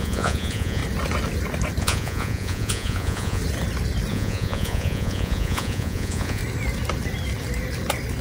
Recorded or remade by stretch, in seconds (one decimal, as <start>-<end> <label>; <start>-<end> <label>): 0.0-0.8 remade; 0.8-1.8 recorded; 1.8-3.4 remade; 3.4-4.1 recorded; 4.1-6.4 remade; 6.4-8.2 recorded